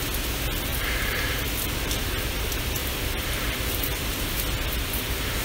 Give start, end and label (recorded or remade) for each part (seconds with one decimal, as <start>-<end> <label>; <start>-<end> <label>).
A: 0.0-2.8 recorded; 2.8-4.4 remade; 4.4-5.4 recorded